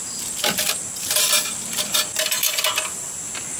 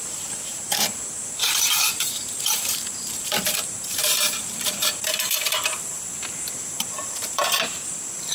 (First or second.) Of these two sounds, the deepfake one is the second